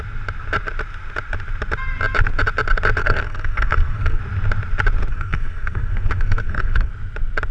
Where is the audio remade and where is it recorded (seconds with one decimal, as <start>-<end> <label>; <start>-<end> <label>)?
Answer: 0.0-3.0 recorded; 3.0-4.2 remade; 4.2-5.1 recorded; 5.1-6.9 remade; 6.9-7.5 recorded